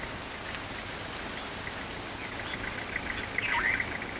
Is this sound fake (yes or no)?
no